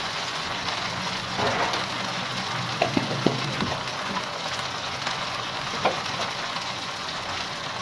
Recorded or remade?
remade